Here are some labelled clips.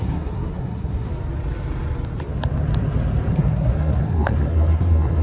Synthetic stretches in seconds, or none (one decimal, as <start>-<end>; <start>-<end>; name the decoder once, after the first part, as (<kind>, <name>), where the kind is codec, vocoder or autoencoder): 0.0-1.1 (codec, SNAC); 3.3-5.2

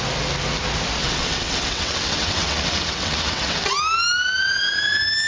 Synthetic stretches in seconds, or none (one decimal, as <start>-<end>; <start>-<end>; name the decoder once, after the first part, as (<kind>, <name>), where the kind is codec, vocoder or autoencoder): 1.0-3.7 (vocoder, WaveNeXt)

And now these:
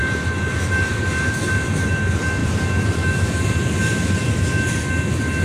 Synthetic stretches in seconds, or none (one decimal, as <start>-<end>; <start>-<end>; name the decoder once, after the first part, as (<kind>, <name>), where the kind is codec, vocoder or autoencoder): 0.0-1.9 (vocoder, BigVGAN v2); 2.4-4.4

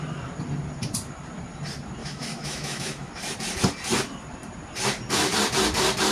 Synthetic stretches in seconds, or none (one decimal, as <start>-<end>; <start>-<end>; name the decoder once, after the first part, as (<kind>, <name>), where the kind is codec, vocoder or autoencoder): 2.0-3.1 (autoencoder, DAC-VAE)

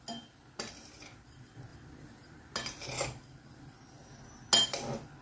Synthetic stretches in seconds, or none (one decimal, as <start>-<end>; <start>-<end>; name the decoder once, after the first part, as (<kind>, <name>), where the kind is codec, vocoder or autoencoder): none

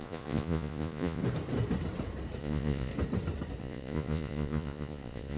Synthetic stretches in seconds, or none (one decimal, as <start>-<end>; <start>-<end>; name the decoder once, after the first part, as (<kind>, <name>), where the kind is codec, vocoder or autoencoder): 0.0-1.2 (vocoder, Vocos); 2.4-2.9; 3.6-5.4

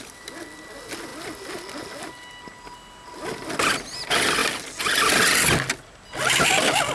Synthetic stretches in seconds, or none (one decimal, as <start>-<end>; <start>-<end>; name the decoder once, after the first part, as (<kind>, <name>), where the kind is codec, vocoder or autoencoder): none

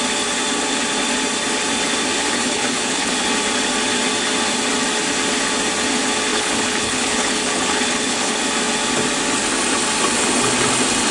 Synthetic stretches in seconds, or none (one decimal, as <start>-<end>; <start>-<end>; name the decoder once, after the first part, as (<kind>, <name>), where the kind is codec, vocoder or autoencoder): 2.4-3.1 (codec, HILCodec); 6.3-8.4